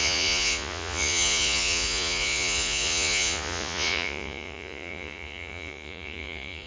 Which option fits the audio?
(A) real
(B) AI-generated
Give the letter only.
B